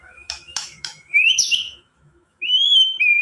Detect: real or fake fake